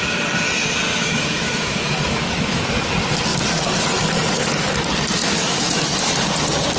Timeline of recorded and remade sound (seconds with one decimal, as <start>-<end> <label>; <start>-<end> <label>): 0.0-0.9 recorded; 0.9-2.6 remade; 2.6-5.2 recorded; 5.2-5.9 remade; 5.9-6.8 recorded